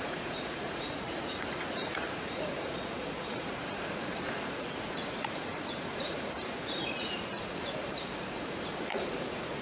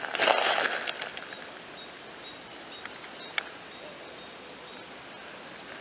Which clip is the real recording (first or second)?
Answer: second